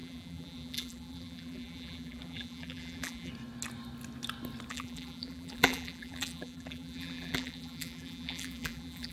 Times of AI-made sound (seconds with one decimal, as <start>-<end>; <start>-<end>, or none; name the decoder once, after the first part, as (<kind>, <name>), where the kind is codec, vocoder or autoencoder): 0.0-3.3 (vocoder, BigVGAN v2); 4.7-9.1